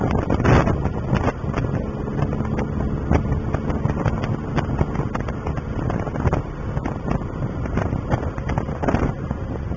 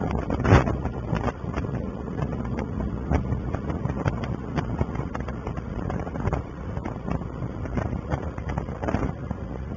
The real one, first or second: first